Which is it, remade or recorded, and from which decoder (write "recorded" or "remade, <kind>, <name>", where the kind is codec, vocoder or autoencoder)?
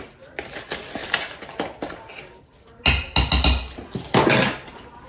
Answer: recorded